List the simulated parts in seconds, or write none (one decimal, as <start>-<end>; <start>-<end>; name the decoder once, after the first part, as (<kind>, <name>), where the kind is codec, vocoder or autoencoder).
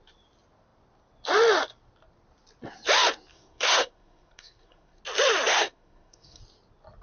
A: 3.3-5.0 (codec, SNAC); 5.5-6.4